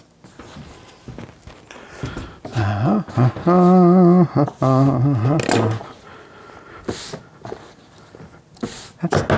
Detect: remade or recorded recorded